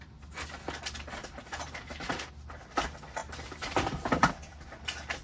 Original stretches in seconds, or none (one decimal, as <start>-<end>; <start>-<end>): 0.0-1.2; 2.3-3.2; 4.3-5.2